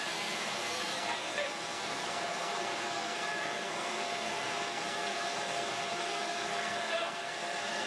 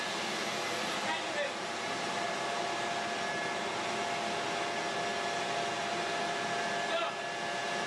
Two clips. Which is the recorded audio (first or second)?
second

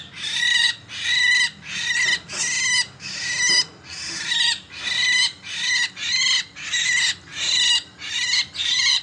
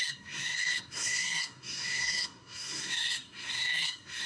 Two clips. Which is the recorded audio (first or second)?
first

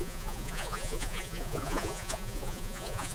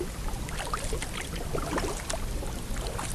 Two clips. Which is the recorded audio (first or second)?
second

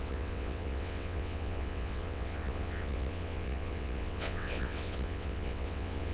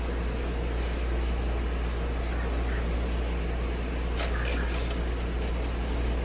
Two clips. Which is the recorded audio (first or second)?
second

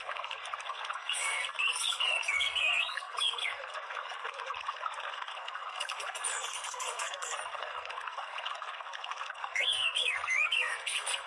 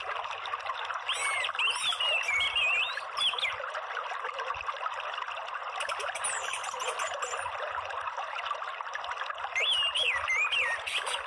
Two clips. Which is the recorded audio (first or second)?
second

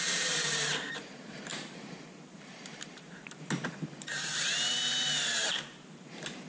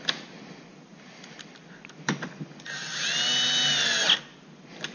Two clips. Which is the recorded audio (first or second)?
second